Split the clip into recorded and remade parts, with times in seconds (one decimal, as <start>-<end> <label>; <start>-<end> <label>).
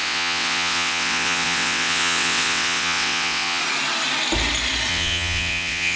0.0-3.6 remade; 3.6-4.9 recorded; 4.9-6.0 remade